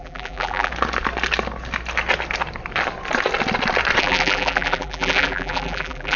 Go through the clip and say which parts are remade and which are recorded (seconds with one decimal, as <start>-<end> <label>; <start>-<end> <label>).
0.0-0.7 remade; 0.7-4.0 recorded; 4.0-6.2 remade

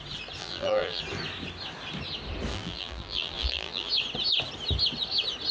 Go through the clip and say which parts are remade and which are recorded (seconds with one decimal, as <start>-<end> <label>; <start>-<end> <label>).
0.0-0.4 recorded; 0.4-1.0 remade; 1.0-2.5 recorded; 2.5-3.9 remade; 3.9-5.5 recorded

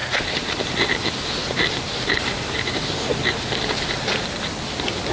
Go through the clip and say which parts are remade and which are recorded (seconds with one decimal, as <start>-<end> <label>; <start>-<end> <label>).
0.0-5.1 recorded

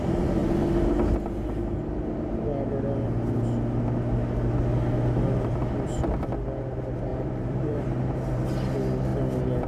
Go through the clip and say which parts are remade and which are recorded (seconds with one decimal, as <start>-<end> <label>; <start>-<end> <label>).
0.0-7.1 recorded; 7.1-8.4 remade; 8.4-9.7 recorded

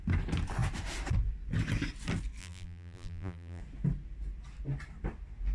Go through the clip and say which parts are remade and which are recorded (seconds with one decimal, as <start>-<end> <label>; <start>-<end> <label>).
0.0-2.4 recorded; 2.4-3.6 remade; 3.6-5.5 recorded

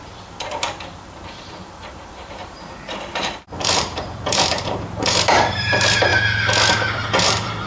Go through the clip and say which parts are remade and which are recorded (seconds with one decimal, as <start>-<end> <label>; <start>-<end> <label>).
0.0-6.1 remade; 6.1-7.2 recorded; 7.2-7.7 remade

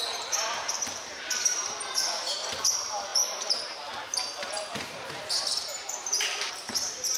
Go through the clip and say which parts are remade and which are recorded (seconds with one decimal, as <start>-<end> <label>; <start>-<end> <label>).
0.0-7.2 remade

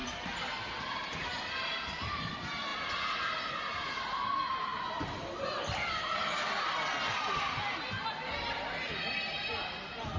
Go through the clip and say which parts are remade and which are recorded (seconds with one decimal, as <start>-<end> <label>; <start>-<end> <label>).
0.0-2.2 remade; 2.2-10.2 recorded